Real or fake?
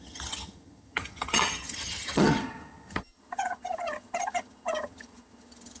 fake